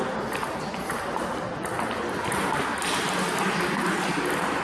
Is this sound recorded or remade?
recorded